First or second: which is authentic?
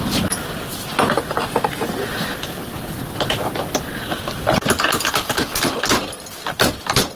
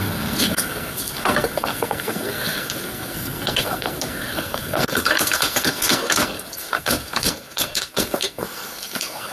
first